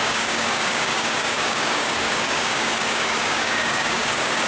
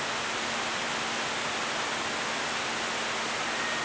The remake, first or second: first